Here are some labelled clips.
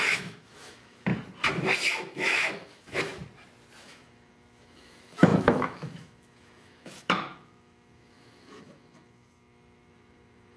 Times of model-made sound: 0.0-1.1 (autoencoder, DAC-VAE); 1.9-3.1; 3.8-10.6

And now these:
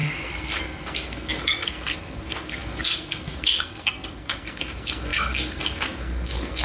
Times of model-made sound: 0.0-6.6 (codec, SNAC)

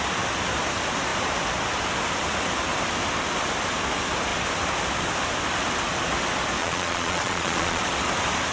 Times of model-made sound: 6.6-7.8 (vocoder, Vocos)

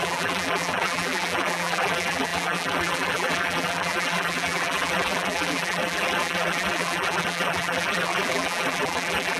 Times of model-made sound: 0.0-9.4 (vocoder, BigVGAN v2)

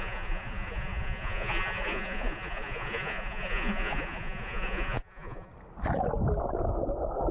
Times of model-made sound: 0.0-5.5 (vocoder, Vocos)

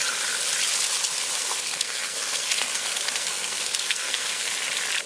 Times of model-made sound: 1.4-4.5 (codec, SNAC)